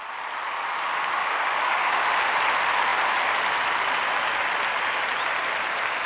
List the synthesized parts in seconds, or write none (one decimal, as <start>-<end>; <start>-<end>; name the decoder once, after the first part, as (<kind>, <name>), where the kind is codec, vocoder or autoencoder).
1.2-1.9 (codec, DAC)